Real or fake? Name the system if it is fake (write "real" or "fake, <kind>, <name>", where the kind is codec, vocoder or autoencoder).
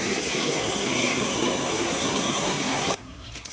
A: fake, codec, SNAC